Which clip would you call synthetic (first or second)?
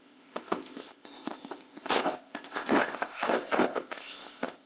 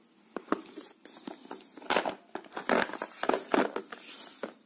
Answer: first